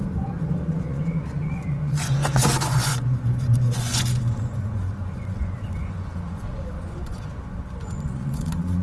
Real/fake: fake